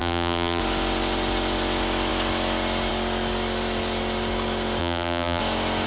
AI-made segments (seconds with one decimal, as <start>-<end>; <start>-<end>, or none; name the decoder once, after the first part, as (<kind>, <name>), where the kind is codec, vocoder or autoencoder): 0.0-0.6 (vocoder, BigVGAN v2); 4.8-5.4